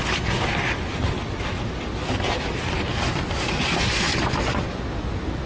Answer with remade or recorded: recorded